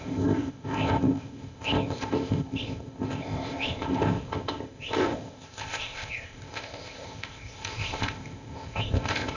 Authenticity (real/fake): fake